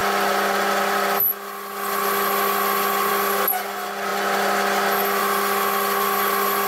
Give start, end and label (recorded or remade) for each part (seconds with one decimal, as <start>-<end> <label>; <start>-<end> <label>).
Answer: 0.0-6.7 recorded